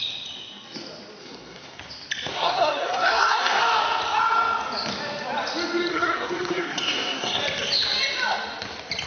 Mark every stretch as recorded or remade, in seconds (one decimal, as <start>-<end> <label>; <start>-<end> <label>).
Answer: 0.0-1.2 recorded; 1.2-1.8 remade; 1.8-2.3 recorded; 2.3-3.6 remade; 3.6-5.9 recorded; 5.9-7.4 remade; 7.4-9.1 recorded